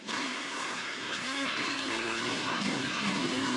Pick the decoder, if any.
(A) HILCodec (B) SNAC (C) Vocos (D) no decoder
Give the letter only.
B